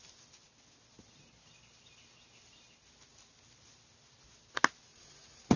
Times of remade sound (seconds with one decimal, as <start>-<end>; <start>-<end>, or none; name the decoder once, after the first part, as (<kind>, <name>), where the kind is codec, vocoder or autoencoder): 4.9-5.6 (vocoder, Vocos)